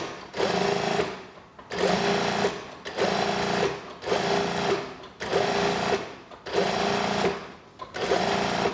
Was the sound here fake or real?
real